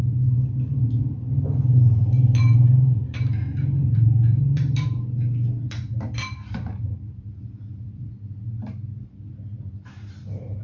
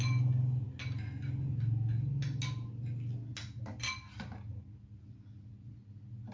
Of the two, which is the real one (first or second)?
second